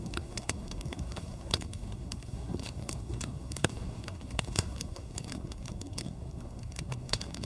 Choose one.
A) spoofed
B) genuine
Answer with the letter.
A